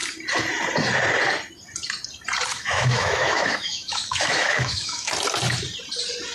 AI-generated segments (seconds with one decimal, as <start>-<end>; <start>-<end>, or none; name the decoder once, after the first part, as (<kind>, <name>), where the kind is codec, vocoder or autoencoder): 2.5-5.1 (autoencoder, DAC-VAE)